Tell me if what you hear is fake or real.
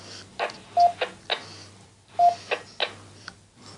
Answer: real